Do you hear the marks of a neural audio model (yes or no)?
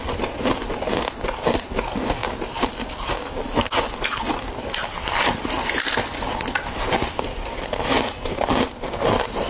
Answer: no